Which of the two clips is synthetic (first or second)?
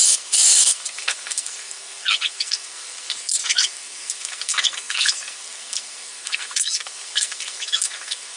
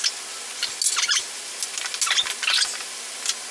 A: first